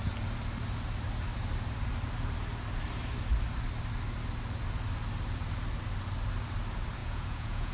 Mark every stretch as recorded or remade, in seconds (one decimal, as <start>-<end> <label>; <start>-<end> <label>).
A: 0.0-7.0 recorded; 7.0-7.7 remade